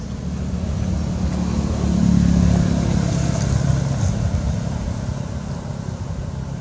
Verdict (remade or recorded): recorded